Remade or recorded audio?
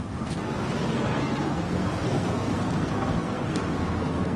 remade